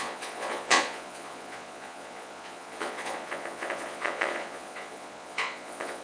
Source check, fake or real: fake